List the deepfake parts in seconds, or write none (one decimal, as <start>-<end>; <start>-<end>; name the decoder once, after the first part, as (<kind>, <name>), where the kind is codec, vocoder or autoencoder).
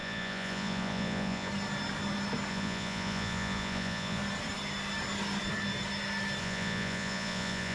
0.0-1.5 (vocoder, Vocos); 2.5-4.2; 6.4-7.7